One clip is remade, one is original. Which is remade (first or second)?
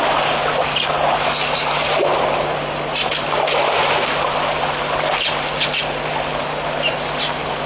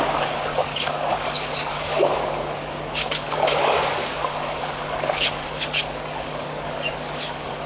second